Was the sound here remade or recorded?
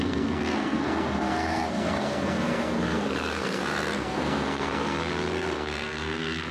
remade